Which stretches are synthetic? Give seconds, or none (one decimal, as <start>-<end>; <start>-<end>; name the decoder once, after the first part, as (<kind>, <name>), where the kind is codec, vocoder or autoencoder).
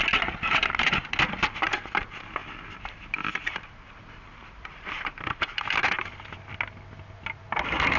2.4-3.9 (vocoder, BigVGAN v2); 4.4-6.1